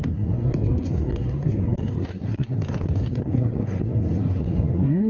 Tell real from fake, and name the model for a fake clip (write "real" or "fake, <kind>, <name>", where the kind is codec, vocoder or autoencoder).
fake, codec, SNAC